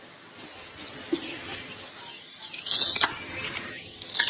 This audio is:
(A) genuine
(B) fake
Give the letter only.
A